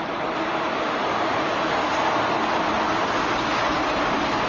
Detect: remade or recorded recorded